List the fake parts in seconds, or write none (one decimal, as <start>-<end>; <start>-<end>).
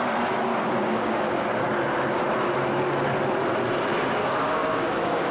0.5-1.6; 4.2-5.3